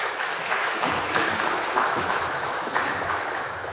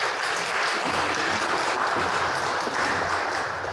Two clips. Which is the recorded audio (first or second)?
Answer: second